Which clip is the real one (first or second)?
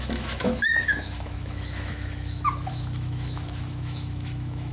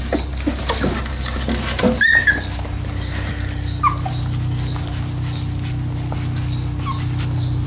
second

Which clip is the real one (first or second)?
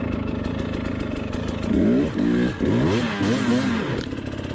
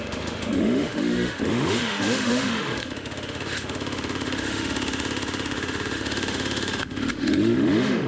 first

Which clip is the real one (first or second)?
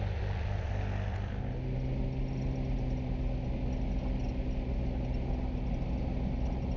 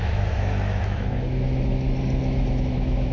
first